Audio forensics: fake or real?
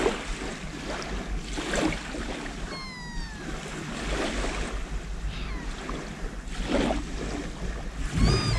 real